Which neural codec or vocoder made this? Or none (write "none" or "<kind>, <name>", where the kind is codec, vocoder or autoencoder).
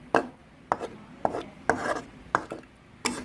none